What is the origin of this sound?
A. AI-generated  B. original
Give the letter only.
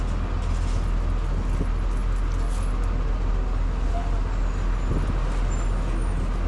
B